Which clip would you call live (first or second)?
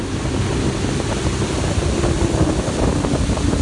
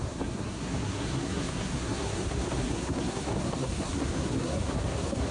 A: first